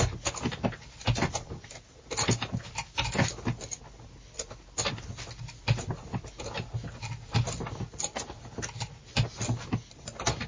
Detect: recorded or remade recorded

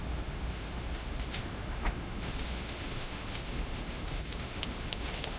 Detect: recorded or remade remade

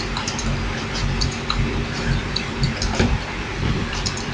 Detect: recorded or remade remade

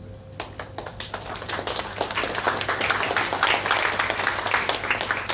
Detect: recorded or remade recorded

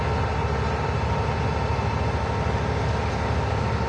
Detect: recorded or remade recorded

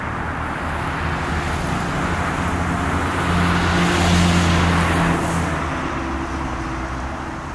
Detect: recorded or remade recorded